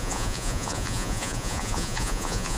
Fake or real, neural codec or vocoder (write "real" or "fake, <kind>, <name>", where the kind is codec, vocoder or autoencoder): fake, vocoder, Vocos